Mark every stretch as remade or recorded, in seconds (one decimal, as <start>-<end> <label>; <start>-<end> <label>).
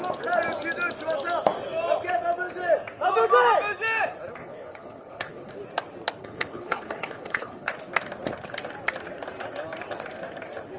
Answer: 0.0-4.4 recorded; 4.4-5.5 remade; 5.5-6.2 recorded; 6.2-7.7 remade; 7.7-10.8 recorded